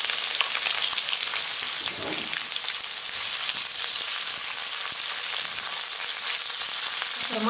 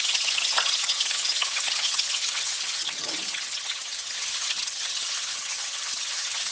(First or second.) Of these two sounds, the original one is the first